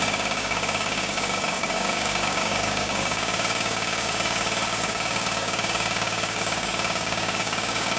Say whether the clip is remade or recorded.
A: remade